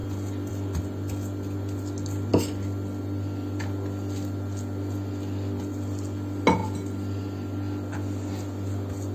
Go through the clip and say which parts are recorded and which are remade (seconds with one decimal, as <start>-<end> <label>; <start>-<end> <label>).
0.0-9.1 recorded